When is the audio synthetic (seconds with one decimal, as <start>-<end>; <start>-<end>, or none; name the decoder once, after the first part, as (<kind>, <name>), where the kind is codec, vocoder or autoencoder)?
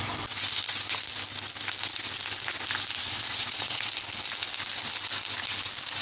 3.0-3.9 (vocoder, WaveNeXt)